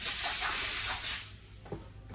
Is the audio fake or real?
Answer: real